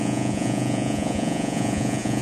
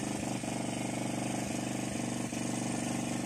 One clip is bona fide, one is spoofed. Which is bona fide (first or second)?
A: second